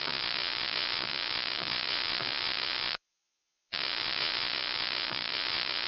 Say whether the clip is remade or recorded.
remade